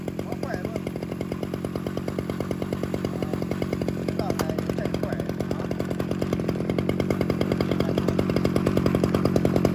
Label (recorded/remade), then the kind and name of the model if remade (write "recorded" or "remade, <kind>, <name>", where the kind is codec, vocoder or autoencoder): recorded